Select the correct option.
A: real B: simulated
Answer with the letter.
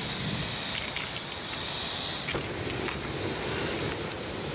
A